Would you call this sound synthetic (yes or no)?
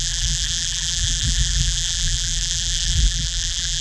yes